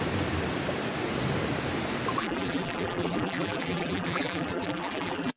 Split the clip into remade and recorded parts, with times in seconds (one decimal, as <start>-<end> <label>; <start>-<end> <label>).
0.0-2.2 recorded; 2.2-5.4 remade